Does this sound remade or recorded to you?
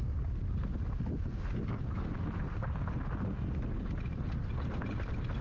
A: recorded